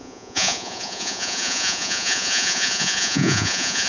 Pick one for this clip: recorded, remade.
remade